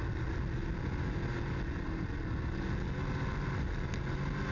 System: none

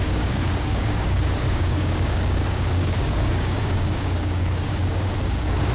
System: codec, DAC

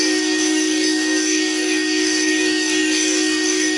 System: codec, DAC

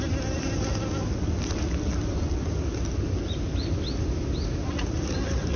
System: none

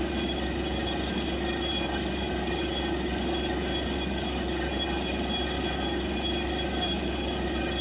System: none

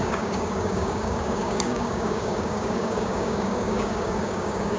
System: codec, DAC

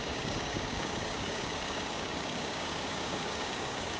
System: codec, DAC